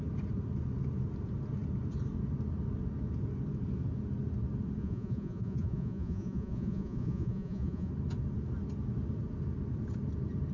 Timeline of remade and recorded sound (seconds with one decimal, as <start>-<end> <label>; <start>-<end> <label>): 0.0-4.8 recorded; 4.8-7.9 remade; 7.9-10.5 recorded